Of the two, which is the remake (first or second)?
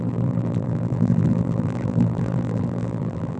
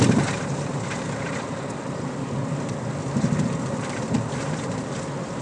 first